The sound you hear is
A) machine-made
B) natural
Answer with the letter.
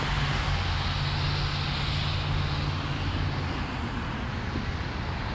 B